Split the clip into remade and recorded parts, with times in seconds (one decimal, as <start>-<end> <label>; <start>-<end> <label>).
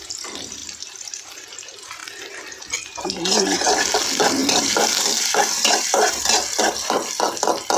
0.0-0.6 recorded; 0.6-1.2 remade; 1.2-2.0 recorded; 2.0-3.8 remade; 3.8-4.4 recorded; 4.4-6.2 remade; 6.2-7.8 recorded